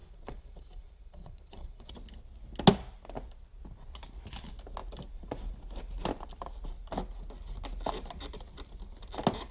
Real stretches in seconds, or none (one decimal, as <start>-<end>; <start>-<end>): 1.9-9.5